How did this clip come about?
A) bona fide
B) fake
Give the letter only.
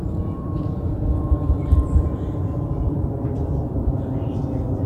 B